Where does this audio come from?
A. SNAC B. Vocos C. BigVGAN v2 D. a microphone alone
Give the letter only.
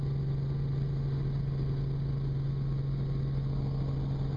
D